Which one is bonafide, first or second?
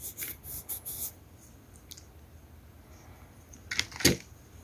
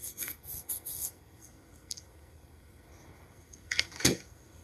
first